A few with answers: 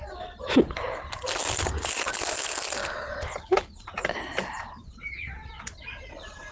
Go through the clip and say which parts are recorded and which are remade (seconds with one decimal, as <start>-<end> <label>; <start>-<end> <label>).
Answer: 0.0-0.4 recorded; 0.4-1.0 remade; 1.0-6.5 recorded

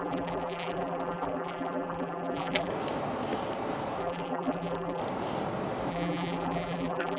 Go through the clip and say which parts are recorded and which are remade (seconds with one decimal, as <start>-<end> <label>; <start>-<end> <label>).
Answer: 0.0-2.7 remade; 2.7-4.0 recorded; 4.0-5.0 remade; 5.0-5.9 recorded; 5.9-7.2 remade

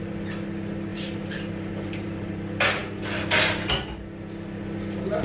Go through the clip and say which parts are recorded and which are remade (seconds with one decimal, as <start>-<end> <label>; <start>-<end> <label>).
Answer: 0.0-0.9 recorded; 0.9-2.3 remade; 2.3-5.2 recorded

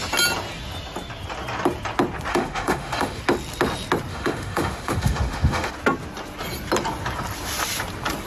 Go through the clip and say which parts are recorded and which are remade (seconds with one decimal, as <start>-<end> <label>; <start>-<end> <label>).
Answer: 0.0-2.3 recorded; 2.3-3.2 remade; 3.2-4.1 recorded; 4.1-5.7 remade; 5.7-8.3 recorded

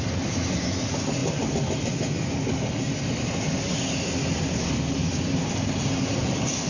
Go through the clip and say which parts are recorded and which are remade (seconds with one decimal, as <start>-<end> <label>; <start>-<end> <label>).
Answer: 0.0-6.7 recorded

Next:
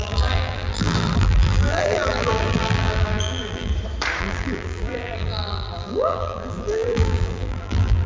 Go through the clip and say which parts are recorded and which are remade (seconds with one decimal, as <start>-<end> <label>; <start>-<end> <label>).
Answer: 0.0-3.7 remade; 3.7-4.2 recorded; 4.2-8.1 remade

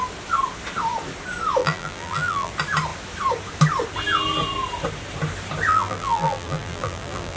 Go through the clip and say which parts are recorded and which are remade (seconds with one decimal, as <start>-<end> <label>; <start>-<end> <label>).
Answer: 0.0-1.6 recorded; 1.6-2.5 remade; 2.5-5.7 recorded; 5.7-7.4 remade